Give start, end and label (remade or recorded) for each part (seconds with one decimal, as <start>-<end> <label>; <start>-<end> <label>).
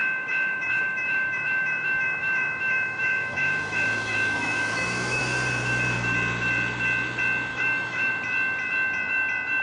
0.0-5.2 remade; 5.2-7.5 recorded; 7.5-8.1 remade; 8.1-9.6 recorded